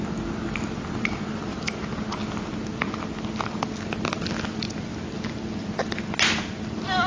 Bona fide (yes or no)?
yes